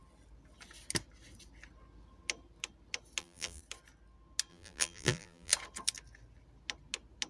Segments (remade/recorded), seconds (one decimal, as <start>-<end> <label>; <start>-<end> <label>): 0.0-3.2 recorded; 3.2-3.6 remade; 3.6-4.5 recorded; 4.5-5.5 remade; 5.5-7.3 recorded